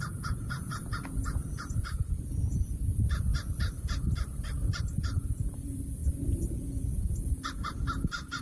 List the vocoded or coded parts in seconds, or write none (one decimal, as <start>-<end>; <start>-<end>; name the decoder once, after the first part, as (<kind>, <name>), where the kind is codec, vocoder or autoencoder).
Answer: 0.0-3.3 (vocoder, Vocos); 4.8-8.4